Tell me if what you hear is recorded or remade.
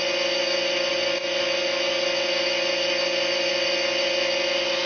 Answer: recorded